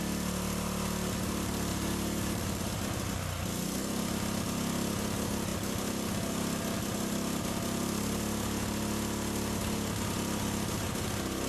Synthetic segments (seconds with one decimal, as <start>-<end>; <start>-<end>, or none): 1.7-2.6